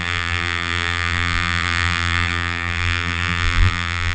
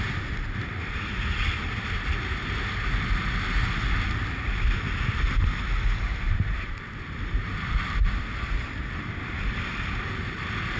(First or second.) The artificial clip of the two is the first